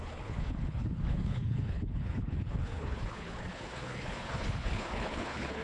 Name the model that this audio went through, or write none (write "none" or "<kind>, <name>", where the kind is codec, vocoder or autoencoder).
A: codec, HILCodec